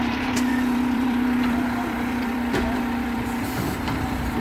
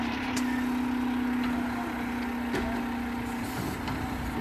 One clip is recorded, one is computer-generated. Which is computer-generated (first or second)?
first